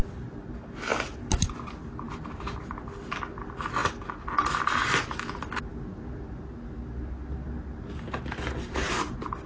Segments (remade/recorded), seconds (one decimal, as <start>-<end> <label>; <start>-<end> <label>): 0.0-9.5 recorded